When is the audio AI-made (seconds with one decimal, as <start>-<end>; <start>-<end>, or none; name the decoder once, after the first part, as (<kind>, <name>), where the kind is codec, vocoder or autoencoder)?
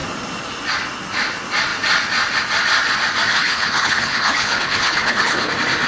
3.3-5.5 (codec, HILCodec)